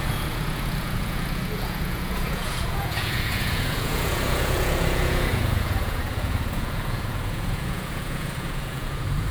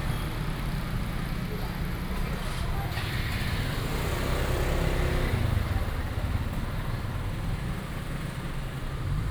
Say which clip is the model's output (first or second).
first